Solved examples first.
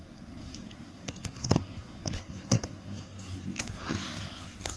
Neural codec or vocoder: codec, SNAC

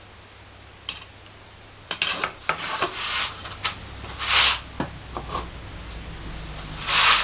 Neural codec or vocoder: none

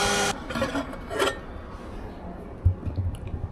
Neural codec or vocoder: none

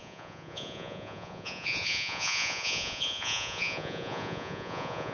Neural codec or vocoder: vocoder, Vocos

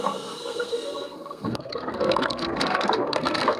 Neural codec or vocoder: codec, SNAC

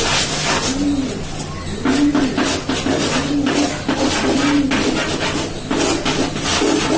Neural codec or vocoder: none